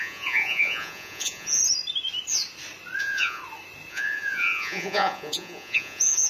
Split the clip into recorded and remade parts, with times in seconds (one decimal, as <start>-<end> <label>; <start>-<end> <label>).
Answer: 0.0-1.6 remade; 1.6-3.0 recorded; 3.0-3.4 remade; 3.4-3.9 recorded; 3.9-6.3 remade